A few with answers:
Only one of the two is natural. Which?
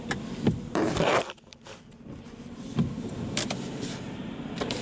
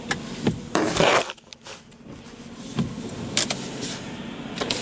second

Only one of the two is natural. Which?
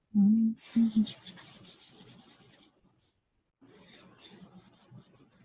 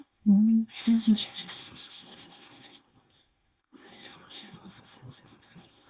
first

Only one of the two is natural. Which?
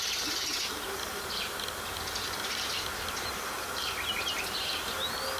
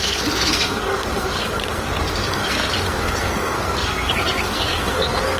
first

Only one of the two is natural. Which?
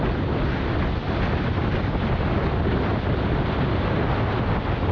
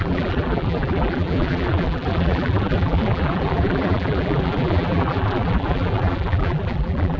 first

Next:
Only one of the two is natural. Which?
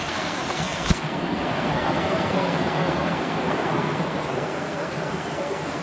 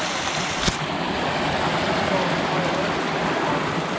second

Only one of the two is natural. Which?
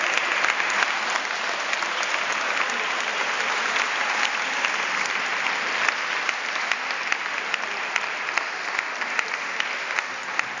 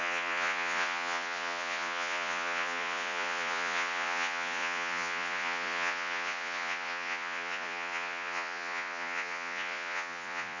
first